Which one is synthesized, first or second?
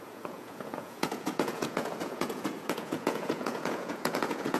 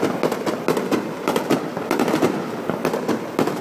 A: first